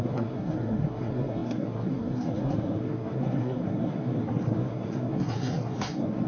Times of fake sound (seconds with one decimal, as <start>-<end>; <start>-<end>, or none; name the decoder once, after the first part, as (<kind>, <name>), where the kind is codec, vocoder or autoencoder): 0.0-6.3 (codec, SNAC)

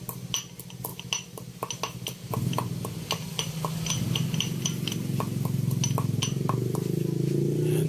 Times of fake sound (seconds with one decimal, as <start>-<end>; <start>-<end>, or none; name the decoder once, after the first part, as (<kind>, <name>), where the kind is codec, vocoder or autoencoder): none

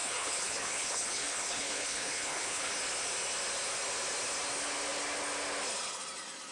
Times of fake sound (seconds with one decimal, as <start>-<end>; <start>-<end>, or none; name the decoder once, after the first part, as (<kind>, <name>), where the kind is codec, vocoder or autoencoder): 0.0-2.7 (codec, HILCodec)

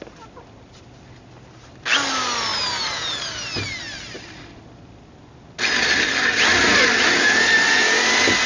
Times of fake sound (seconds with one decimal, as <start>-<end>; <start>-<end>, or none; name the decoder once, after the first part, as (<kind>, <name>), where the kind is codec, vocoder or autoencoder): none

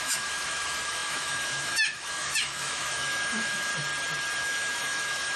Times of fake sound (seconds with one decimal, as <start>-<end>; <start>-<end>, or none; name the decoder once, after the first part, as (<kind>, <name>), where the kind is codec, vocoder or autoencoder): 0.0-3.7 (autoencoder, DAC-VAE); 4.4-5.4